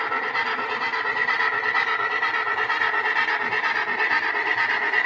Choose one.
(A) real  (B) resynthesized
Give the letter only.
A